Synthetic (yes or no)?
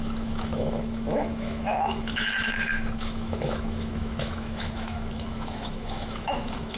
yes